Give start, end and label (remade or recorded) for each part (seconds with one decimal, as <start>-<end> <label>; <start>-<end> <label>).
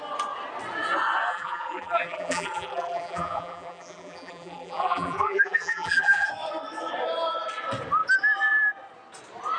0.0-1.3 recorded; 1.3-6.3 remade; 6.3-9.6 recorded